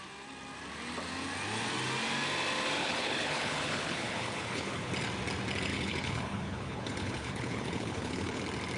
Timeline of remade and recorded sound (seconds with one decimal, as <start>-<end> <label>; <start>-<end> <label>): 0.0-2.8 recorded; 2.8-4.9 remade; 4.9-5.7 recorded; 5.7-8.4 remade; 8.4-8.8 recorded